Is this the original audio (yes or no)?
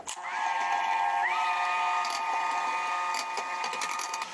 yes